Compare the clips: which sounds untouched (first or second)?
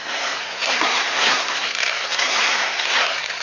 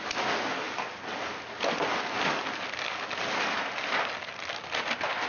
second